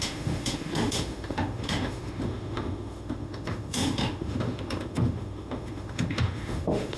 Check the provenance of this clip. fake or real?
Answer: fake